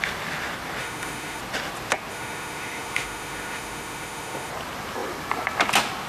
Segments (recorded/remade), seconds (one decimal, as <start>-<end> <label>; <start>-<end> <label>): 0.0-0.8 recorded; 0.8-1.4 remade; 1.4-2.1 recorded; 2.1-4.5 remade; 4.5-6.1 recorded